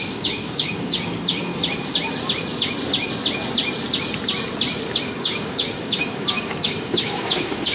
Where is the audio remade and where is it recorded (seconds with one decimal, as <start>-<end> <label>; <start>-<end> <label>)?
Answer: 0.0-1.5 remade; 1.5-5.0 recorded; 5.0-7.7 remade